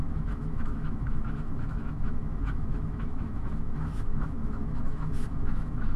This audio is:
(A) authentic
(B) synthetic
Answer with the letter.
B